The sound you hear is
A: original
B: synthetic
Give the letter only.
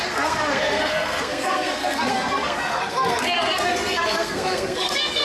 B